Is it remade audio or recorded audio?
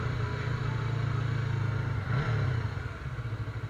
recorded